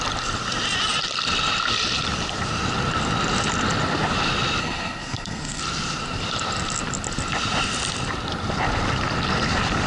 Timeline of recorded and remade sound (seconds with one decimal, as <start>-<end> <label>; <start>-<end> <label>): 0.0-4.6 recorded; 4.6-5.6 remade; 5.6-9.9 recorded